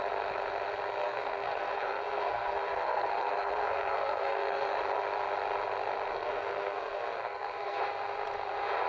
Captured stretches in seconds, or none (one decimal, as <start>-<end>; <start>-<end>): 0.0-1.0; 4.8-6.1; 7.8-8.9